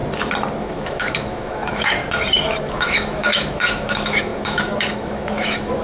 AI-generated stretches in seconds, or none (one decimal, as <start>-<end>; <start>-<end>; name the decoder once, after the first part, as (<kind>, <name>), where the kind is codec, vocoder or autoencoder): 0.6-2.0 (autoencoder, DAC-VAE); 2.7-5.8